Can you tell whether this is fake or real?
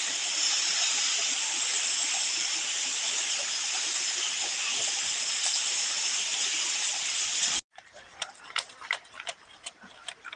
real